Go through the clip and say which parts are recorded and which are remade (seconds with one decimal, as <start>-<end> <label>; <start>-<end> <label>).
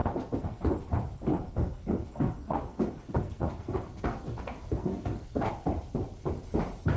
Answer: 0.0-0.6 remade; 0.6-1.3 recorded; 1.3-5.5 remade; 5.5-7.0 recorded